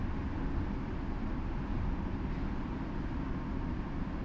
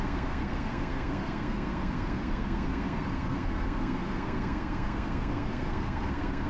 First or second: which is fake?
second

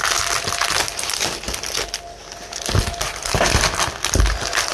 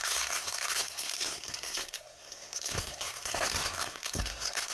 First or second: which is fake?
second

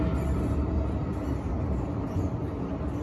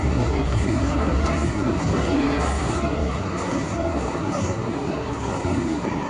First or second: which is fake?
second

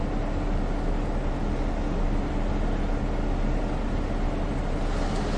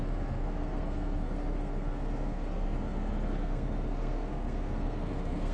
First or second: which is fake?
second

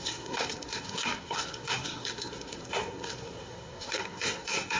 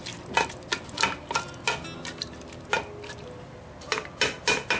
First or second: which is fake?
first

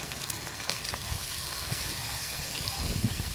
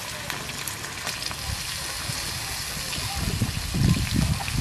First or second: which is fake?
first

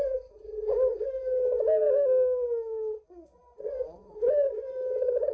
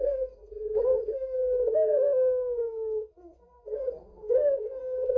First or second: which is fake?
second